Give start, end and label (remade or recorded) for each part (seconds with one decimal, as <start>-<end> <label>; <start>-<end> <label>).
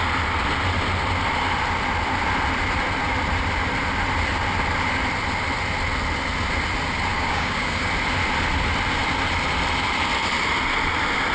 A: 0.0-7.1 recorded; 7.1-7.9 remade; 7.9-11.3 recorded